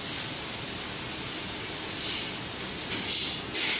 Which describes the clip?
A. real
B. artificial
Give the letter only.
A